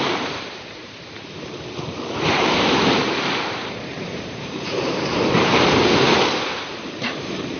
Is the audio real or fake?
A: fake